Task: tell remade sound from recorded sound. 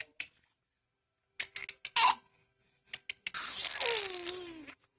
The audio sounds recorded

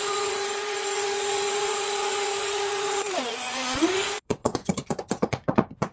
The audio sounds remade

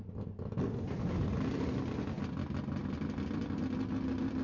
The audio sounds recorded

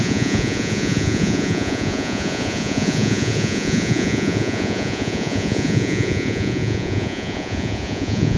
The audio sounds remade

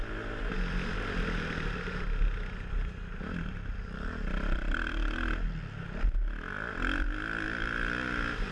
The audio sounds recorded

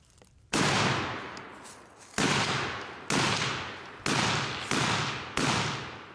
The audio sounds recorded